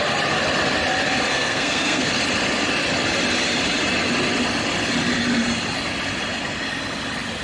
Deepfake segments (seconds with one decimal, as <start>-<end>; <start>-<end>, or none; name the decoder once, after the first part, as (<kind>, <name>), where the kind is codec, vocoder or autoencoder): 1.3-2.1 (codec, SNAC)